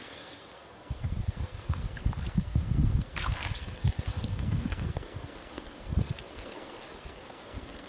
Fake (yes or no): yes